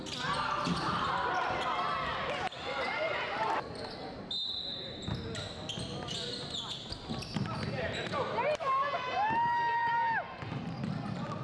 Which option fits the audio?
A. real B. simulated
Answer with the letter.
A